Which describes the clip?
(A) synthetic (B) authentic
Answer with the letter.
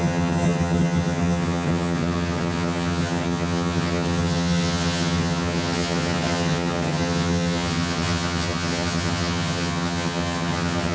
A